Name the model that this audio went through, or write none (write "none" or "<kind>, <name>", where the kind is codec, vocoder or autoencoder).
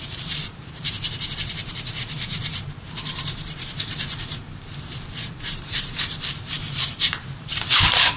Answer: vocoder, BigVGAN v2